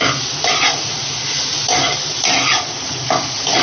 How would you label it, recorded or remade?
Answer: recorded